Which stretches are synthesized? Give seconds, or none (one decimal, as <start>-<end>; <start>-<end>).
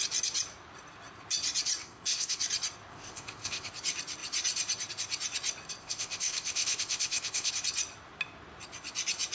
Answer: 1.8-2.4; 2.9-3.7; 5.8-7.5